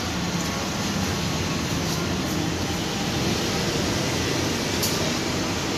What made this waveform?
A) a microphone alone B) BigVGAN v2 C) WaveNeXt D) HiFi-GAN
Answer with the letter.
A